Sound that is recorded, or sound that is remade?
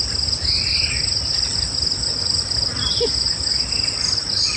recorded